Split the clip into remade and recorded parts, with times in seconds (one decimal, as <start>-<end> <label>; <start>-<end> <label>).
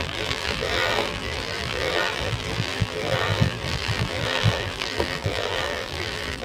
0.0-6.4 remade